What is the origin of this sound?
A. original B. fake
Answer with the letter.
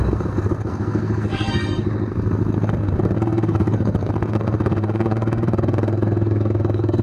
B